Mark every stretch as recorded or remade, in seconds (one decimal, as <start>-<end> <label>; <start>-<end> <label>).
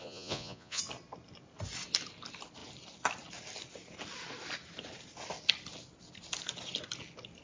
0.0-0.8 remade; 0.8-7.4 recorded